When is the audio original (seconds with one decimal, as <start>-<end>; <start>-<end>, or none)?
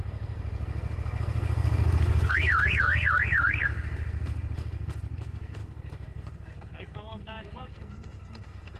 none